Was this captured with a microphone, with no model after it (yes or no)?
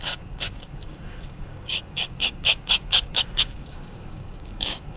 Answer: no